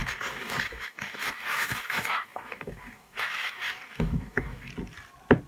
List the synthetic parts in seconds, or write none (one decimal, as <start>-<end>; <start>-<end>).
0.0-4.7